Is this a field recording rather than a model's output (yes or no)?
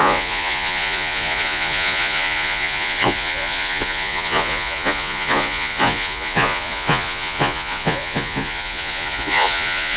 no